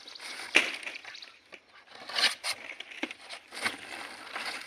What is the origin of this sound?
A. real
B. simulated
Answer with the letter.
A